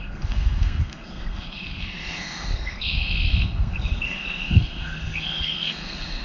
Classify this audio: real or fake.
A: fake